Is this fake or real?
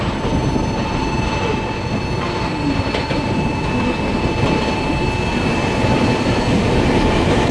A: real